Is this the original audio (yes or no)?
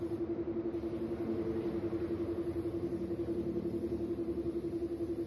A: yes